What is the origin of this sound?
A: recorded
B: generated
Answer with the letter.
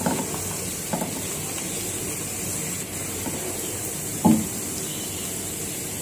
A